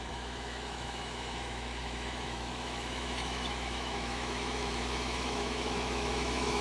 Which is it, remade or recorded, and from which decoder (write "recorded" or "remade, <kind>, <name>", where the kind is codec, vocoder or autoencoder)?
remade, autoencoder, DAC-VAE